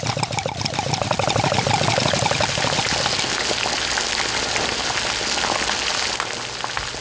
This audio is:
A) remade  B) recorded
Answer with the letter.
B